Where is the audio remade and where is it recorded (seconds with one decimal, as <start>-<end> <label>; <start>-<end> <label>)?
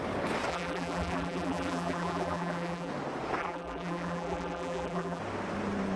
0.0-0.5 recorded; 0.5-2.9 remade; 2.9-3.4 recorded; 3.4-5.2 remade; 5.2-6.0 recorded